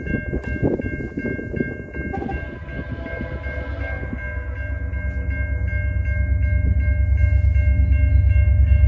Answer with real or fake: real